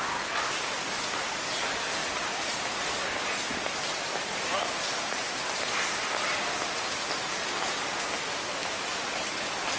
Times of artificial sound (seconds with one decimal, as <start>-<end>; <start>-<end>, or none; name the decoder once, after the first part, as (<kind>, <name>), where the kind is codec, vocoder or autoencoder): none